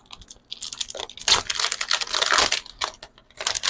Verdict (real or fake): real